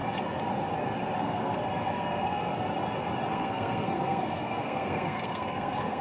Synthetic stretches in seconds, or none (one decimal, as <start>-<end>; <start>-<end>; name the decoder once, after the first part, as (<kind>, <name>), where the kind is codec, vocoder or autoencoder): 1.2-2.5 (codec, SNAC); 3.3-6.0